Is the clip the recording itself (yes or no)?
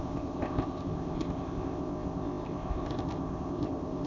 no